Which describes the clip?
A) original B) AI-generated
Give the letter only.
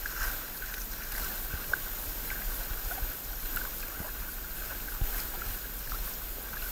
A